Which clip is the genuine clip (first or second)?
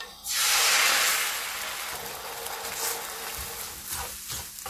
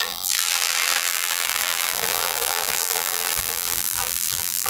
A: first